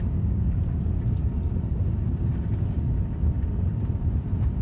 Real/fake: fake